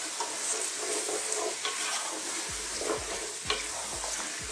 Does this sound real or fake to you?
real